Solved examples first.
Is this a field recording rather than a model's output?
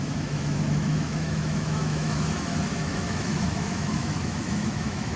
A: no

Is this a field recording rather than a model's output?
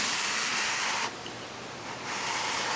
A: yes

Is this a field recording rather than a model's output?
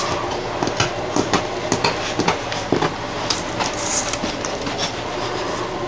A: yes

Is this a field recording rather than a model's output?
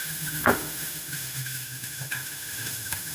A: no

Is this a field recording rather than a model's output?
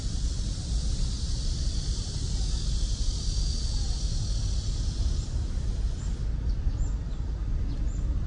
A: yes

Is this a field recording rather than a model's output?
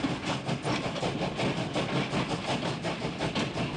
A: yes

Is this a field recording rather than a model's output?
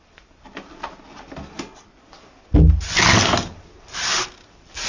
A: yes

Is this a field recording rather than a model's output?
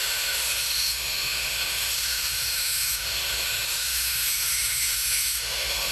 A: no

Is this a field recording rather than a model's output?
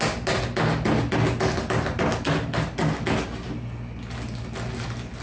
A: yes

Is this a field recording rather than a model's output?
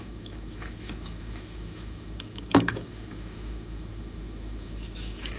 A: no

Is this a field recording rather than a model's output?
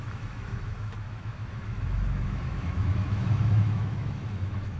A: no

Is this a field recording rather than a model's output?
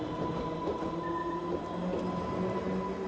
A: yes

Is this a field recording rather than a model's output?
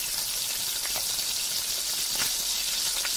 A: yes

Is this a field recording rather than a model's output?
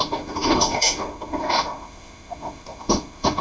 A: no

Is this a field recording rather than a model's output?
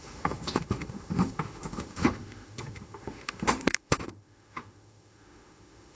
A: no